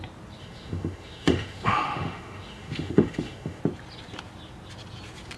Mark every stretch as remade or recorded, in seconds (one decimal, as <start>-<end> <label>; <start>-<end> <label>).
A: 0.0-0.4 recorded; 0.4-3.6 remade; 3.6-5.4 recorded